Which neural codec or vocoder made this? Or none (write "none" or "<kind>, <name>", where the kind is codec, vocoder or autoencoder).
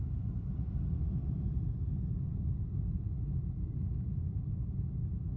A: none